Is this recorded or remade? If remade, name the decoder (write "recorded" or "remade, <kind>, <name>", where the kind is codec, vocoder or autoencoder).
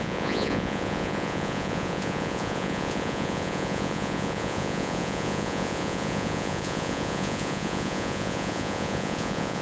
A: remade, vocoder, Vocos